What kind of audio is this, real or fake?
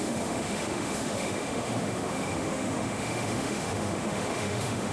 fake